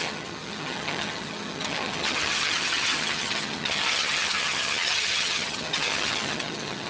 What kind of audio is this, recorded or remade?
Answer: remade